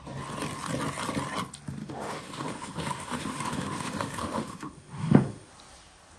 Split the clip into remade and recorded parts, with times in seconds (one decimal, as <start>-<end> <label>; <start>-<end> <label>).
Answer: 0.0-1.8 recorded; 1.8-5.5 remade; 5.5-6.2 recorded